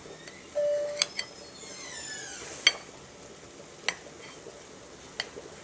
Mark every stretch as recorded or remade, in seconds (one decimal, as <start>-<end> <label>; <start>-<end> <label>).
0.0-5.6 recorded